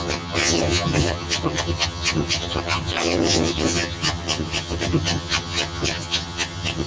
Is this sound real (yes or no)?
no